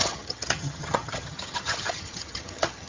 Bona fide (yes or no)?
no